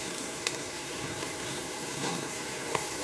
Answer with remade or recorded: remade